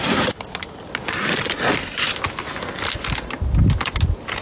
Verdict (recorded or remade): recorded